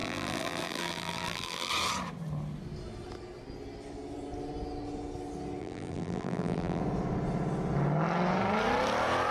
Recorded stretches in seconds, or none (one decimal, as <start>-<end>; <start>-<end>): 1.7-5.6; 6.8-9.3